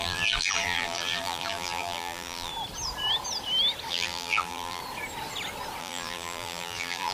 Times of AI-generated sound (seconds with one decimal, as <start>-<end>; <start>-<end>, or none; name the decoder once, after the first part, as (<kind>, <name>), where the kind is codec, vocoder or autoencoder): 0.0-2.5 (vocoder, BigVGAN v2); 3.9-4.8; 5.8-7.1